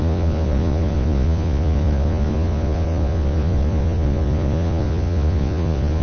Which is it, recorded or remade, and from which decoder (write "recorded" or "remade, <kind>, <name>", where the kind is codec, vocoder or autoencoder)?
remade, vocoder, Vocos